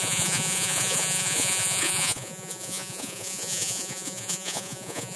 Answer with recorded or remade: remade